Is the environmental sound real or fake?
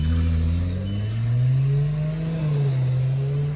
real